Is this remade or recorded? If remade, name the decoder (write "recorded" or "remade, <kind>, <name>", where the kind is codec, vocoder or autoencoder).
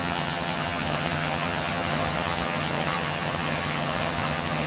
remade, vocoder, HiFi-GAN